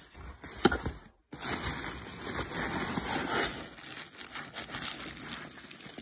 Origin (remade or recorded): recorded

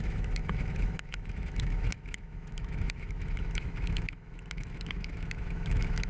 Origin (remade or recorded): remade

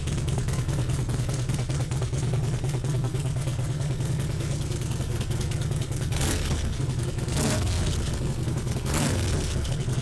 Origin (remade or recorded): remade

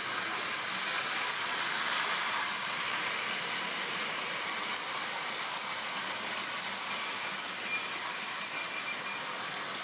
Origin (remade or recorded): recorded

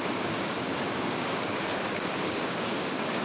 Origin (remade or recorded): remade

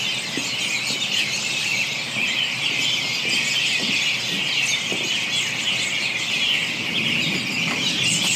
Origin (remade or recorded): recorded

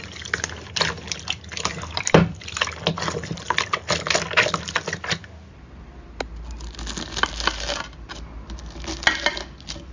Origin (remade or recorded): recorded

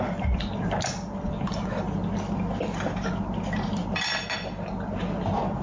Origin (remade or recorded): recorded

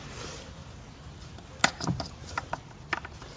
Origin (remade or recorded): recorded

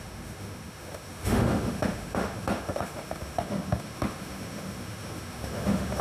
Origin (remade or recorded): remade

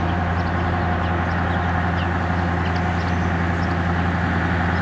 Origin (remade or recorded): recorded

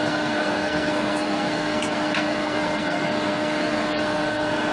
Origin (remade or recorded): remade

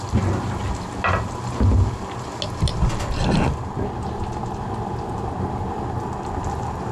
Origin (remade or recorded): recorded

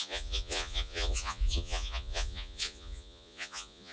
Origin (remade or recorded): remade